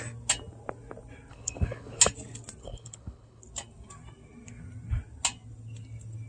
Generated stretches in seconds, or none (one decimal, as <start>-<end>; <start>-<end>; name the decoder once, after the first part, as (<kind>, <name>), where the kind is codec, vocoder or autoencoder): 1.3-2.0 (codec, HILCodec); 2.6-3.4